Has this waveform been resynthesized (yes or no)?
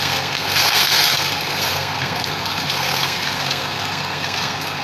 yes